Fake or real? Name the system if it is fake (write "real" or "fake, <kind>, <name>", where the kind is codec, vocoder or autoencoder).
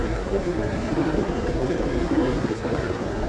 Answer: fake, codec, SNAC